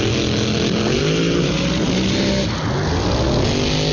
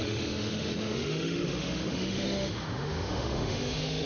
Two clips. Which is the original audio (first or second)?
first